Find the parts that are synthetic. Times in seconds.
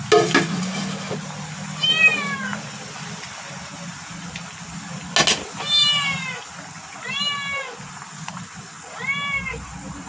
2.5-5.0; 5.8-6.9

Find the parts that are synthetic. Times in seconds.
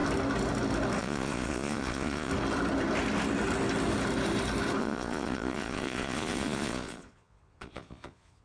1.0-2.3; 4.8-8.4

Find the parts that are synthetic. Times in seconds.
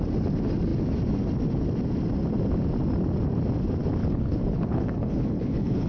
4.0-5.9